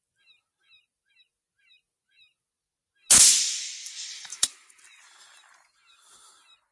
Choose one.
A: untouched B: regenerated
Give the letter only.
A